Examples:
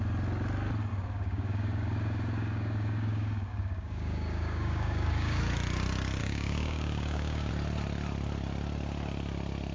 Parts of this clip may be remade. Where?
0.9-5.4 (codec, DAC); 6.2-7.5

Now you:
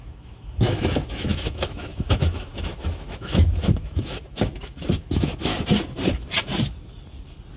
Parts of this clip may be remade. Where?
0.0-5.5 (autoencoder, DAC-VAE)